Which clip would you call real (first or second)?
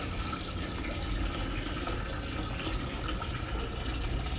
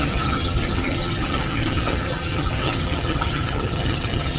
first